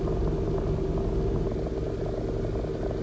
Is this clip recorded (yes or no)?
yes